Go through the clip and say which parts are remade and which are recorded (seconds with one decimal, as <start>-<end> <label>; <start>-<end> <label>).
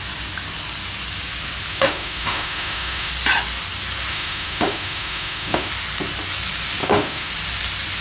0.0-1.7 recorded; 1.7-3.1 remade; 3.1-4.1 recorded; 4.1-5.7 remade; 5.7-6.8 recorded; 6.8-7.3 remade; 7.3-8.0 recorded